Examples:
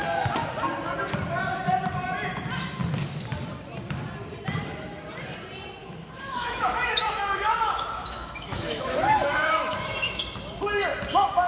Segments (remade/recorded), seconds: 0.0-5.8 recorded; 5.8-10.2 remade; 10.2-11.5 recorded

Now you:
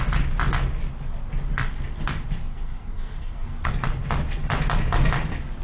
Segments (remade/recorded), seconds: 0.0-2.5 recorded; 2.5-3.7 remade; 3.7-5.6 recorded